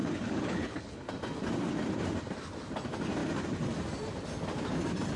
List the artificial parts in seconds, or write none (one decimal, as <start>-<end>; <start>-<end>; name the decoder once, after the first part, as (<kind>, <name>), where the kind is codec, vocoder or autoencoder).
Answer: 0.0-1.1 (codec, HILCodec)